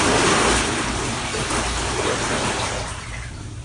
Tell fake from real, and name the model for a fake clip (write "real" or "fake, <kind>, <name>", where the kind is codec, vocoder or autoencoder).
real